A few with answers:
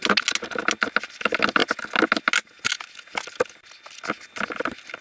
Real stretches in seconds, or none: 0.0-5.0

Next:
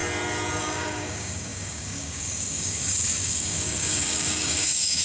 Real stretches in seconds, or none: 0.0-0.6

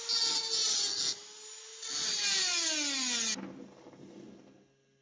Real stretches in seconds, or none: 0.0-5.0

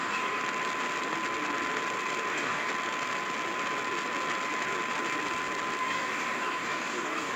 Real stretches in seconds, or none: 0.4-2.3; 2.7-5.8

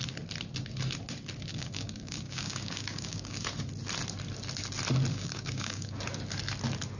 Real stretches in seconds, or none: 0.0-1.5; 3.4-5.1; 6.0-7.0

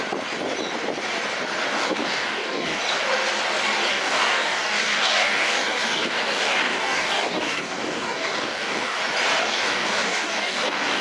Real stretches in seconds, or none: 0.0-1.7; 2.8-3.9; 9.0-9.4